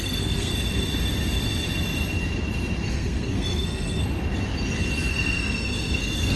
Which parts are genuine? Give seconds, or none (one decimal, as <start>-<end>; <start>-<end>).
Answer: 0.5-2.9; 4.0-5.1